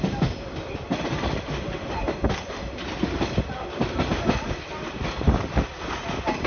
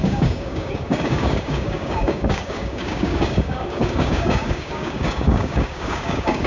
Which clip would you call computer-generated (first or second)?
second